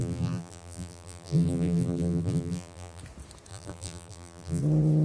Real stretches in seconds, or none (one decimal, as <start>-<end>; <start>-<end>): 3.0-3.5; 4.6-5.0